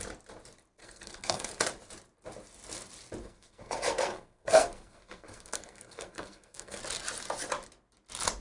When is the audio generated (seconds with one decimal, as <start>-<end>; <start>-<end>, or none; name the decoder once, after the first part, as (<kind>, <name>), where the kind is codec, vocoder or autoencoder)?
0.8-1.5 (codec, SNAC); 3.2-6.8